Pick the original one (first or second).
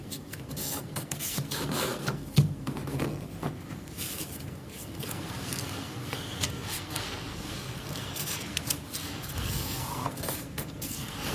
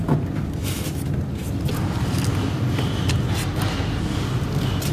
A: second